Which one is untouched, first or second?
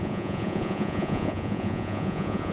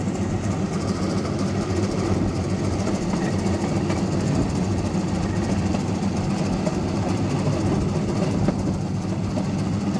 second